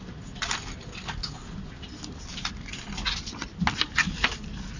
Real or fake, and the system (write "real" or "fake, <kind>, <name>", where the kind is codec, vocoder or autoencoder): real